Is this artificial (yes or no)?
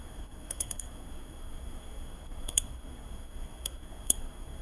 yes